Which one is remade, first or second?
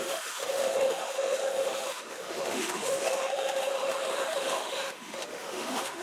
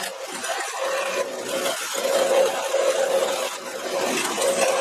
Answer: first